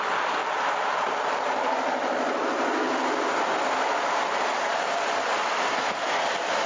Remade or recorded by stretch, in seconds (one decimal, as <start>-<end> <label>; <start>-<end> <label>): 0.0-6.7 recorded

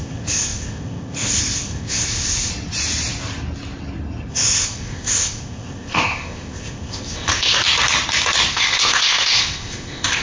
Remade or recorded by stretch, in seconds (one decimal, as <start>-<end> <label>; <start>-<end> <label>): 0.0-2.5 remade; 2.5-4.3 recorded; 4.3-7.6 remade; 7.6-8.5 recorded; 8.5-10.2 remade

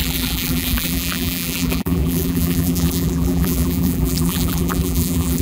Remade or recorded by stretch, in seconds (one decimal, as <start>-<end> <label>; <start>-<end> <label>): 0.0-5.4 remade

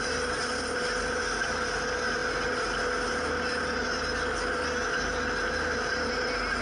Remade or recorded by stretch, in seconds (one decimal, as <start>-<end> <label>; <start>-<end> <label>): 0.0-6.6 recorded

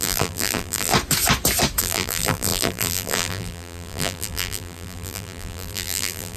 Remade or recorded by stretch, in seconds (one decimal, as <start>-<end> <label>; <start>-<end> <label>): 0.0-0.9 remade; 0.9-1.8 recorded; 1.8-6.4 remade